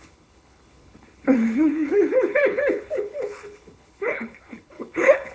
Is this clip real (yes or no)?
no